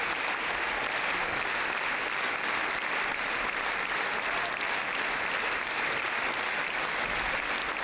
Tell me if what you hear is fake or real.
real